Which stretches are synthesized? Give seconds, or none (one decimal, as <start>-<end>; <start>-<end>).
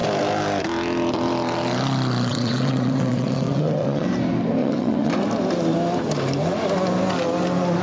2.3-4.1; 4.6-5.1